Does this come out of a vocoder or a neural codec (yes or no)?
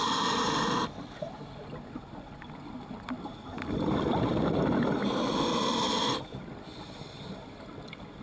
no